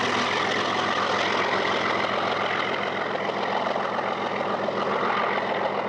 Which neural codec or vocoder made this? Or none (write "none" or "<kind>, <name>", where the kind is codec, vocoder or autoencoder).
none